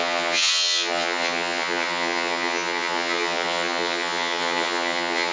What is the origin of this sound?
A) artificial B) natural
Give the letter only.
A